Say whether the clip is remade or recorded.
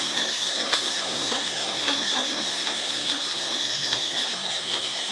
remade